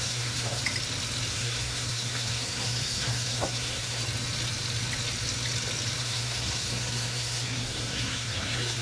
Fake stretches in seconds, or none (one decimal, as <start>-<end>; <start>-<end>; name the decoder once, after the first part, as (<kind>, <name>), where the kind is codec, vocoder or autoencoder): 0.0-0.6 (codec, SNAC); 1.3-4.0; 6.0-8.8